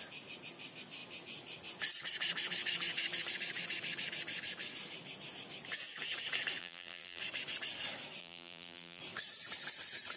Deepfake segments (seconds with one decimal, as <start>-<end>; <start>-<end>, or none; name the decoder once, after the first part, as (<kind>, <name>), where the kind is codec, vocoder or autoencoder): 6.6-7.2 (vocoder, BigVGAN v2); 8.2-9.0